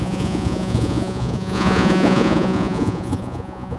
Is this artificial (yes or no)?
yes